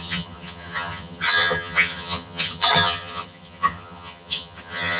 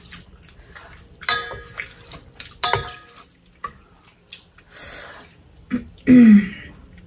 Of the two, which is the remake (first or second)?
first